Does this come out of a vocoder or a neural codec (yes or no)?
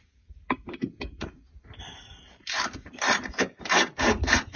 yes